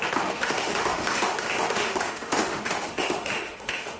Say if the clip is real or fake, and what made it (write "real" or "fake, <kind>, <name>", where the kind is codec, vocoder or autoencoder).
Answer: fake, autoencoder, DAC-VAE